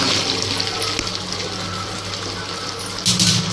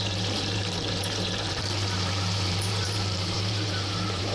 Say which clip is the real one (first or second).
first